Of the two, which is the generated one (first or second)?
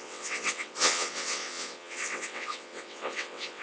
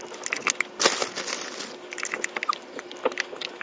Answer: first